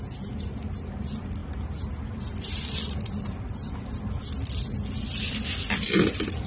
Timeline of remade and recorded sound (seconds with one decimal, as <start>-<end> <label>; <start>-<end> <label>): 0.0-6.5 recorded